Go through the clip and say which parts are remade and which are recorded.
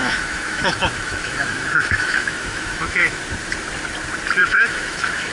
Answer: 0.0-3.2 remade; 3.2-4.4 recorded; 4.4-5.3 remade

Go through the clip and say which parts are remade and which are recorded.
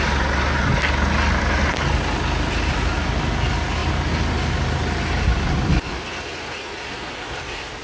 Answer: 0.0-7.8 recorded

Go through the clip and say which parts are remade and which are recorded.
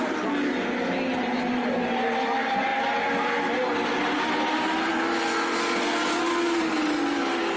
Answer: 0.0-7.6 recorded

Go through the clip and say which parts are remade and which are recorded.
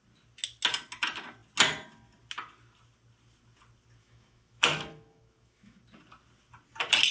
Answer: 0.0-4.0 recorded; 4.0-5.8 remade; 5.8-7.1 recorded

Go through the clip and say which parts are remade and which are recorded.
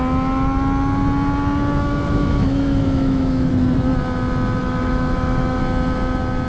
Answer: 0.0-1.8 recorded; 1.8-3.5 remade; 3.5-4.6 recorded; 4.6-5.6 remade; 5.6-6.5 recorded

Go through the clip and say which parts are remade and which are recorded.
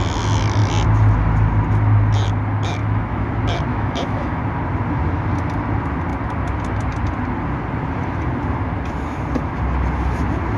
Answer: 0.0-2.8 recorded; 2.8-3.3 remade; 3.3-3.7 recorded; 3.7-4.4 remade; 4.4-10.6 recorded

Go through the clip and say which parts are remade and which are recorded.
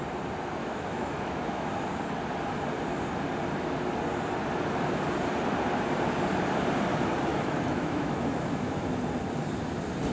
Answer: 0.0-0.6 recorded; 0.6-1.7 remade; 1.7-7.3 recorded; 7.3-8.9 remade; 8.9-10.1 recorded